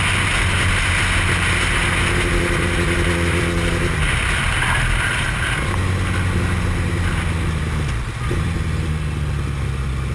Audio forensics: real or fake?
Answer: real